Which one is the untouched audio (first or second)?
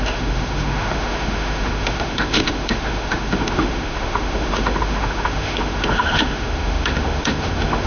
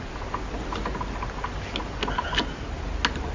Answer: second